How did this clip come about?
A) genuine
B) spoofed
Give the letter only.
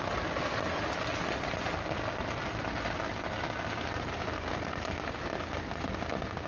A